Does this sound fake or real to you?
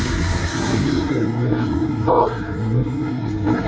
fake